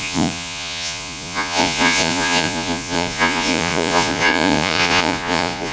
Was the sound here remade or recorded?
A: remade